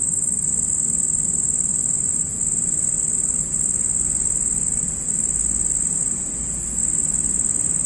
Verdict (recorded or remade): recorded